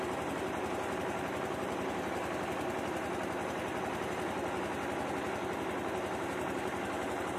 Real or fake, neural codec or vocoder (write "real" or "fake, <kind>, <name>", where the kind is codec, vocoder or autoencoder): real